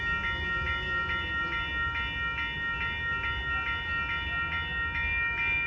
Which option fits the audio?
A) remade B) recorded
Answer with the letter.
B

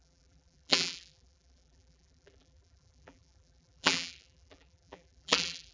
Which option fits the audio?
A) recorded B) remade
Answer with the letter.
B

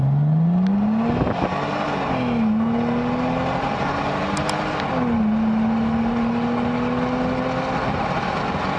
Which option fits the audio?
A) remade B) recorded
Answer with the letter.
B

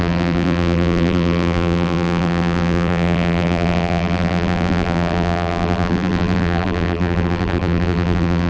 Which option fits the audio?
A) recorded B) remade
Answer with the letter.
B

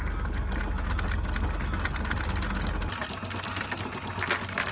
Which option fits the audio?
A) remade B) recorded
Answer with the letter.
B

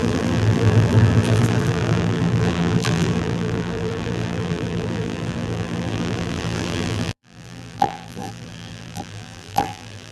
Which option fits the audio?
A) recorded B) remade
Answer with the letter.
B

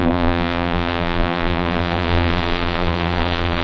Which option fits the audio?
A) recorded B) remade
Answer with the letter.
B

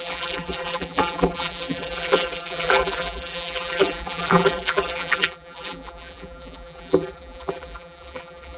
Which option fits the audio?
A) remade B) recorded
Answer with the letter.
A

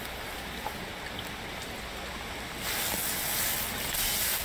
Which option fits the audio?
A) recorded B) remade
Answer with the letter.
A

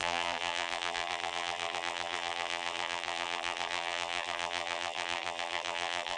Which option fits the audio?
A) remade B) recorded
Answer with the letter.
A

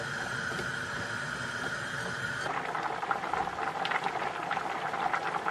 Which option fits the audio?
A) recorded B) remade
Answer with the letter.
B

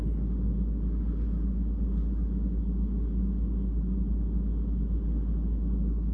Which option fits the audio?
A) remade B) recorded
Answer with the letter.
B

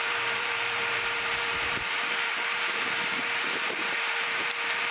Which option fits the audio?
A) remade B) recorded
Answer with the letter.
A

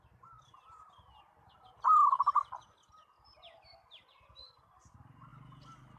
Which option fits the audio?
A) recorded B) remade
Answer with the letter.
A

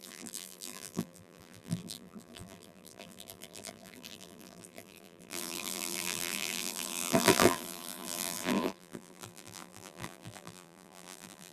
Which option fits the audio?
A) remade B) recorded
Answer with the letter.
A